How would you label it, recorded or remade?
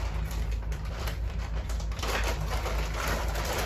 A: remade